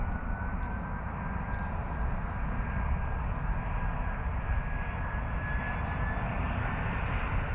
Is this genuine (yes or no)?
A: yes